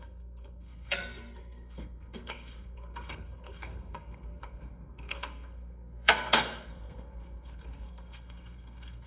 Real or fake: fake